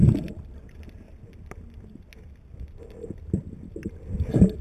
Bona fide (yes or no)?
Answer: yes